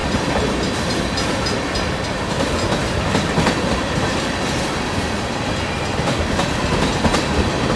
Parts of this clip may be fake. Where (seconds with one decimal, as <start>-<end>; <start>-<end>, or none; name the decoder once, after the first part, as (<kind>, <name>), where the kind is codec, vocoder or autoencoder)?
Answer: none

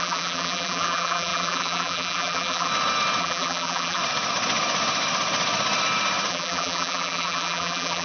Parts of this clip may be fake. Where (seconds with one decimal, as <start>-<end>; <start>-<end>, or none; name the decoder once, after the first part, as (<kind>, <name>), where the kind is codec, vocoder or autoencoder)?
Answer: 0.0-2.7 (vocoder, BigVGAN v2); 3.2-4.0; 6.3-8.0

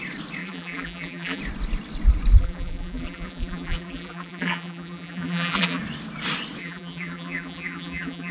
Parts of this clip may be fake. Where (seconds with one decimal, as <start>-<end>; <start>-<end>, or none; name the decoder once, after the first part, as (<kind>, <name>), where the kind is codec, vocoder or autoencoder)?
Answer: 0.4-1.4 (vocoder, BigVGAN v2); 2.4-5.8; 6.6-8.3